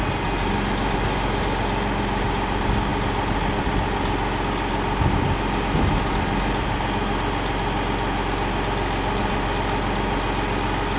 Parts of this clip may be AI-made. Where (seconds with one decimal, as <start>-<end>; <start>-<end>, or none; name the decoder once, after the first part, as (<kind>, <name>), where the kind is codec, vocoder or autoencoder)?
none